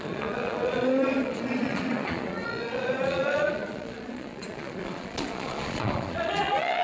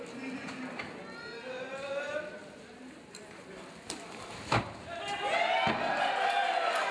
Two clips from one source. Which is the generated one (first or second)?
first